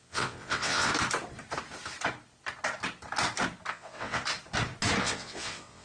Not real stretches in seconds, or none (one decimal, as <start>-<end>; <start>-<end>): 0.0-0.9; 3.7-4.2; 5.0-5.8